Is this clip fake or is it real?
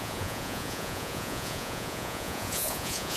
fake